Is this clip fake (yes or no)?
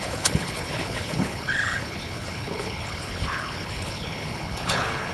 yes